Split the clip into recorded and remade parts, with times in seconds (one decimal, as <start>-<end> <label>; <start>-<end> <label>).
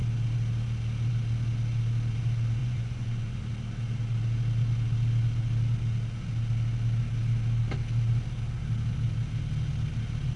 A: 0.0-2.6 recorded; 2.6-3.4 remade; 3.4-10.4 recorded